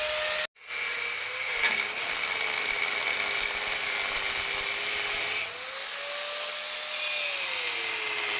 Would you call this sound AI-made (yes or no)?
no